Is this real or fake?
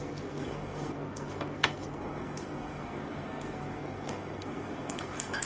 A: fake